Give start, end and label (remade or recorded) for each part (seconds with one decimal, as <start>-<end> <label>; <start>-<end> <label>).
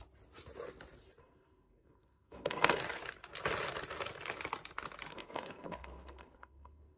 0.0-1.2 recorded; 1.2-2.8 remade; 2.8-5.1 recorded; 5.1-7.0 remade